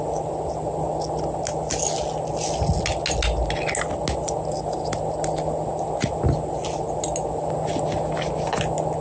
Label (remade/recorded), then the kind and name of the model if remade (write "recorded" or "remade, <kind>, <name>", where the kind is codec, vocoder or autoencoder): recorded